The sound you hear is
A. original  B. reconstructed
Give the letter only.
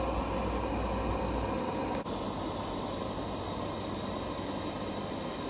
A